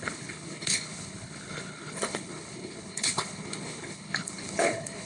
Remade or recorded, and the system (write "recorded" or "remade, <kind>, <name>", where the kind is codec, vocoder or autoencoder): remade, codec, HILCodec